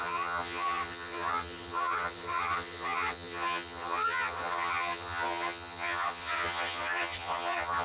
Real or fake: fake